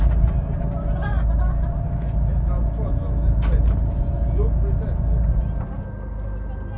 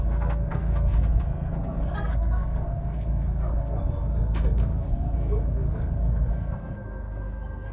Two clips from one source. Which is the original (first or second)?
first